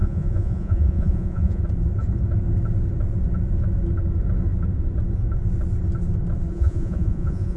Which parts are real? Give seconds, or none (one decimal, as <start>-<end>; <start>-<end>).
1.6-6.5